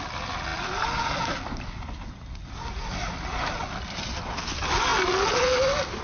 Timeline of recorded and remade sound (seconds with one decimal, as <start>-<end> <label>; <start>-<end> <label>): 0.0-6.0 recorded